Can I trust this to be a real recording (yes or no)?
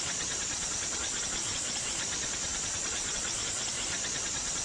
no